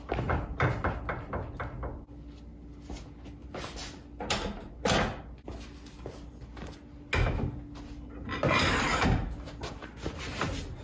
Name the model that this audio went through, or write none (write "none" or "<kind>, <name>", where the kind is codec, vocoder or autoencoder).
none